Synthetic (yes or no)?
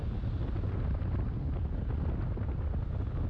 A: no